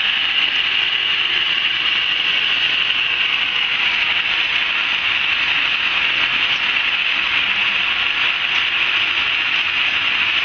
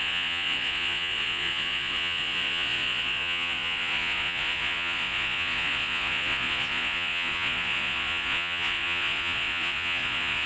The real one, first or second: first